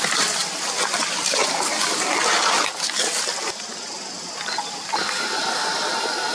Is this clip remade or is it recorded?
recorded